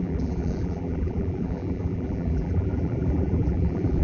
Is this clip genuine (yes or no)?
no